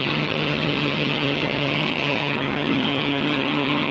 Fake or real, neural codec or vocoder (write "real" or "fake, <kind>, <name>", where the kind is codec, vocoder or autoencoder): fake, vocoder, HiFi-GAN